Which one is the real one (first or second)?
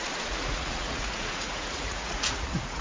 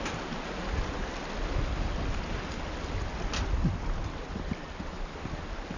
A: second